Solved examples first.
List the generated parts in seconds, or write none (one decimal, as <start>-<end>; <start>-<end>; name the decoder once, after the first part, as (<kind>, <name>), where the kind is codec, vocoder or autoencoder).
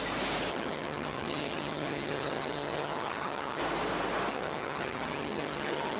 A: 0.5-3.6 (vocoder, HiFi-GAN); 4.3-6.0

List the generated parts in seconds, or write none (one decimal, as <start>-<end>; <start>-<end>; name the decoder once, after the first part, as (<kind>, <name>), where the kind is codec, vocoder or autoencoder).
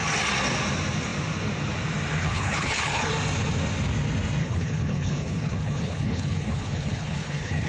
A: 2.2-3.1 (codec, HILCodec); 4.4-7.7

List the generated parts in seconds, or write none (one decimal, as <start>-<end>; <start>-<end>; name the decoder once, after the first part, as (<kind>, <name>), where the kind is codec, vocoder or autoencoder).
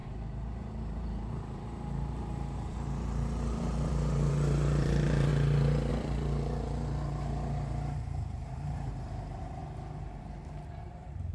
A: 0.0-5.3 (vocoder, BigVGAN v2); 5.9-9.6; 10.2-11.3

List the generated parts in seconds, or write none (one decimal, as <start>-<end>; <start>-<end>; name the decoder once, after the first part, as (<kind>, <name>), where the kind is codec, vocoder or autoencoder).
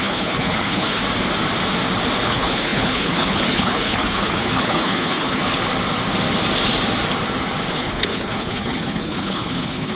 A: 0.0-1.0 (codec, HILCodec); 2.2-5.4; 7.7-10.0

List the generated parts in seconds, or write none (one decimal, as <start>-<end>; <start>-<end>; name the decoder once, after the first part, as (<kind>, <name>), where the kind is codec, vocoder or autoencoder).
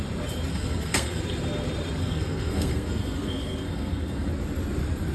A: 0.5-1.2 (codec, SNAC); 2.0-4.3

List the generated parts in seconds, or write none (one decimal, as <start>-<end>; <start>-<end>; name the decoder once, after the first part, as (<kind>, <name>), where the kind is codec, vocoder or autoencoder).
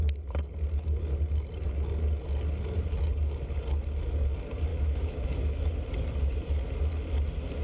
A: 4.7-5.7 (autoencoder, DAC-VAE)